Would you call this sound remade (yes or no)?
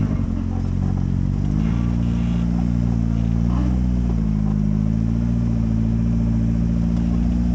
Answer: no